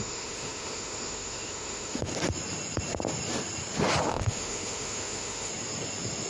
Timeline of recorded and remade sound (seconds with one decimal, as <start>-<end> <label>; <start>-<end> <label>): 0.0-2.1 remade; 2.1-4.1 recorded; 4.1-5.5 remade; 5.5-6.3 recorded